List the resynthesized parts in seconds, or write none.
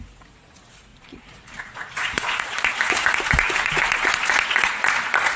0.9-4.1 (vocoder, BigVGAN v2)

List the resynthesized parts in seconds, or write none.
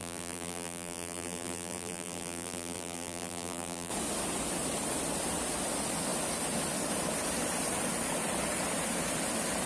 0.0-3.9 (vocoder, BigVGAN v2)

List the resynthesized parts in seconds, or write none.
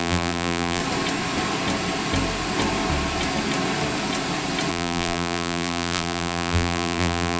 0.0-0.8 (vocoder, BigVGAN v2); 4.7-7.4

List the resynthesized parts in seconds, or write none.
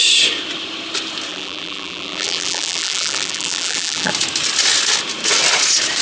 1.3-4.1 (vocoder, BigVGAN v2)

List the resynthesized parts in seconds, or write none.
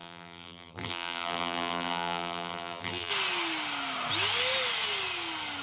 0.0-3.1 (vocoder, BigVGAN v2)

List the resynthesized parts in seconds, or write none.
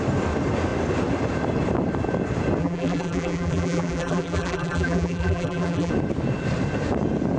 2.6-5.9 (vocoder, BigVGAN v2)